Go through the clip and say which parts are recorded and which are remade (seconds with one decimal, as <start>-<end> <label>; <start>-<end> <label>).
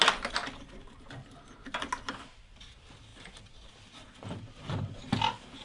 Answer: 0.0-5.6 recorded